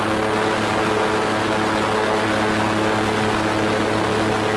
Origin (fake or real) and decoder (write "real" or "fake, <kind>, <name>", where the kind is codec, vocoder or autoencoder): real